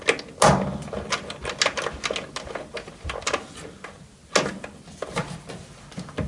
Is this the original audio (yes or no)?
yes